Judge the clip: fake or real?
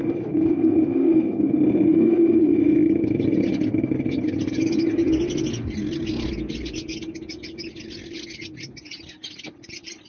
real